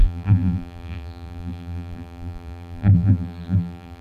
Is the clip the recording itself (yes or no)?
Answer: no